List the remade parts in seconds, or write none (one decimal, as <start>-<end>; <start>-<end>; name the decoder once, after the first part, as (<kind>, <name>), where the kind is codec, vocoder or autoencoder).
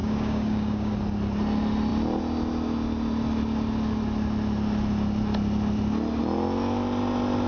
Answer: 0.0-0.9 (codec, DAC)